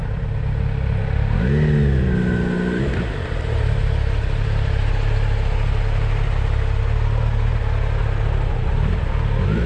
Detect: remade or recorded recorded